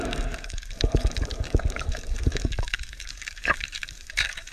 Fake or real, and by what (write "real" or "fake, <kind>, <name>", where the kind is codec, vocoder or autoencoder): fake, codec, DAC